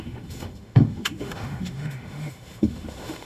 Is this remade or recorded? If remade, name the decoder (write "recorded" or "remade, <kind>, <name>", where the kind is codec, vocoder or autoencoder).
remade, autoencoder, DAC-VAE